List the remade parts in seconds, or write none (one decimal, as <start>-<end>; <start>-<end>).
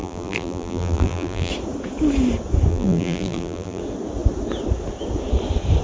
0.0-1.5; 2.7-3.8